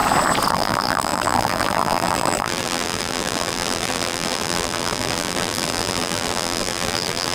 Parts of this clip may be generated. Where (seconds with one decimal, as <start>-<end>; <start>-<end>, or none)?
0.5-7.3